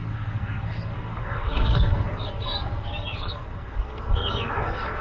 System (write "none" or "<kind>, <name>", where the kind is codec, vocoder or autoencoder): codec, SNAC